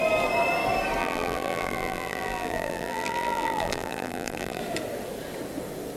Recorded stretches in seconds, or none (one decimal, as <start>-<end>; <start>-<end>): 0.0-1.0; 4.6-6.0